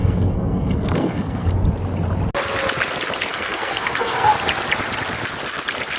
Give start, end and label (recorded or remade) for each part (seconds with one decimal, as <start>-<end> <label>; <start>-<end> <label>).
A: 0.0-1.5 remade; 1.5-3.3 recorded; 3.3-4.3 remade; 4.3-6.0 recorded